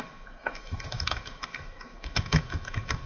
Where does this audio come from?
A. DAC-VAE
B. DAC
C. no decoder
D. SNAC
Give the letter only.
A